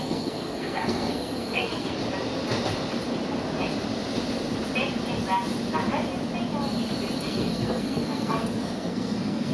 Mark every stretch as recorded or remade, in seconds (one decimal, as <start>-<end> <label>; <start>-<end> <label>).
0.0-2.0 remade; 2.0-7.2 recorded; 7.2-9.5 remade